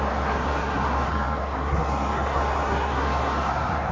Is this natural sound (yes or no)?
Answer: no